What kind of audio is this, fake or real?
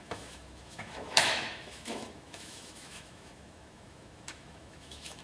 fake